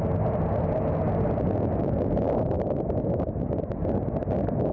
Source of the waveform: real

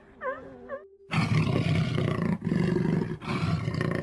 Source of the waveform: real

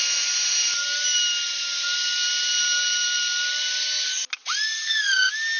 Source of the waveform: real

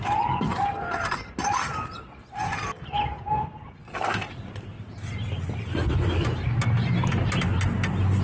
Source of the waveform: real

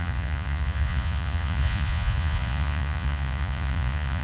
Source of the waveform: fake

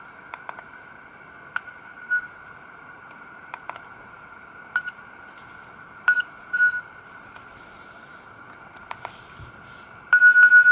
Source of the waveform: real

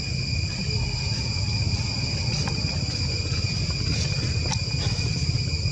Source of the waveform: real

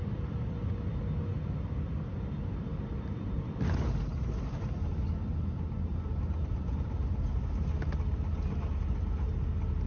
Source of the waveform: real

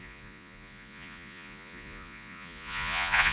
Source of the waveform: fake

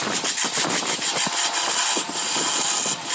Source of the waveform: real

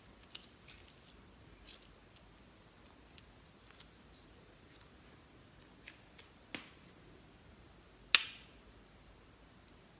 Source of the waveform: real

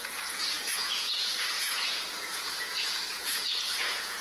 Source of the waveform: fake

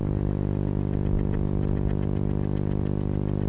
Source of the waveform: real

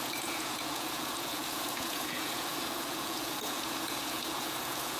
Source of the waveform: fake